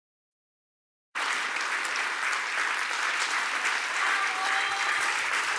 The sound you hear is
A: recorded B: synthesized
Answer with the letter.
B